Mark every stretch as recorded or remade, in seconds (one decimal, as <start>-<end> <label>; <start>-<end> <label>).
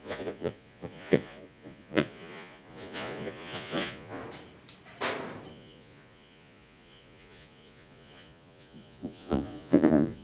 0.0-4.2 remade; 4.2-5.5 recorded; 5.5-10.2 remade